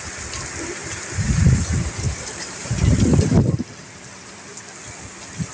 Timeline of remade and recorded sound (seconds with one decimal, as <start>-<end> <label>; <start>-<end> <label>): 0.0-0.8 recorded; 0.8-2.7 remade; 2.7-5.5 recorded